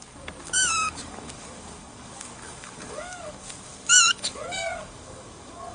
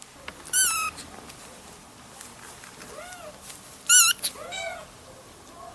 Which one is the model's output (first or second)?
first